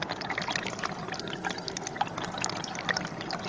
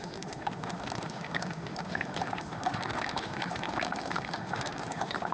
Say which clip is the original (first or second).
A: first